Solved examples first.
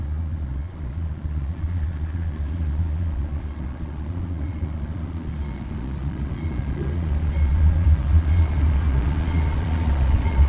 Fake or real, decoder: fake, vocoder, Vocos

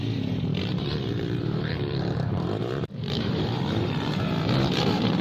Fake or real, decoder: fake, vocoder, BigVGAN v2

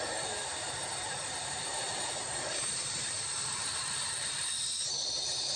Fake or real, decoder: fake, vocoder, BigVGAN v2